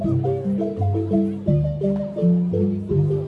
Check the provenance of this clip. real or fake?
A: real